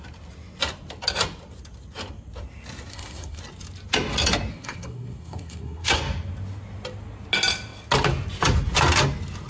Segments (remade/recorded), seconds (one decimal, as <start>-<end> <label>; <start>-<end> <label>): 0.0-2.9 recorded; 2.9-3.4 remade; 3.4-4.5 recorded; 4.5-6.0 remade; 6.0-9.5 recorded